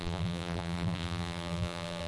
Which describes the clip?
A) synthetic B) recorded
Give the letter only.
A